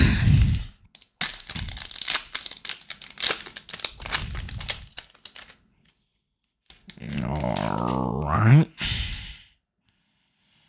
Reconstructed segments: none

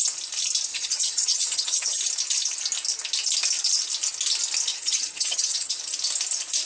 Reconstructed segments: 0.7-2.0 (vocoder, HiFi-GAN); 4.7-5.8

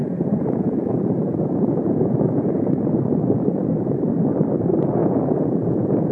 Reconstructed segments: 0.0-2.7 (vocoder, Vocos); 5.0-6.1

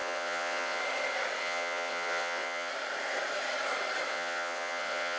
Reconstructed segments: 0.0-0.8 (vocoder, WaveNeXt); 1.4-2.7; 4.1-5.2

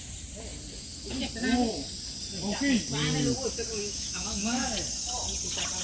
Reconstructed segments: 3.8-4.7 (autoencoder, DAC-VAE)

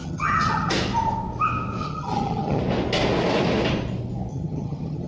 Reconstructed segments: 0.0-0.7 (vocoder, HiFi-GAN); 1.8-2.6; 4.3-5.1

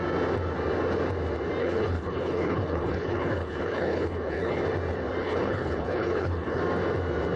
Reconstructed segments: 1.6-4.6 (codec, HILCodec); 5.2-6.6

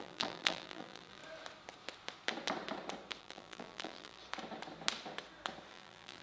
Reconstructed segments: 0.0-1.2 (vocoder, BigVGAN v2); 3.2-4.2; 5.7-6.2